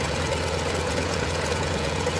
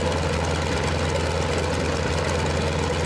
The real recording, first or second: second